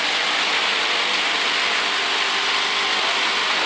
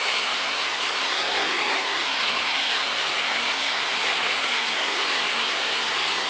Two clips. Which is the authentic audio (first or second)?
first